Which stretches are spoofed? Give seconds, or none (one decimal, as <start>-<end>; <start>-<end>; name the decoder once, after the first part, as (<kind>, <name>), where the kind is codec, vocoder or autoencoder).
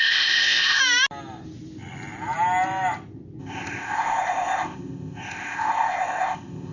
0.0-0.8 (codec, ZipCodec); 3.4-6.7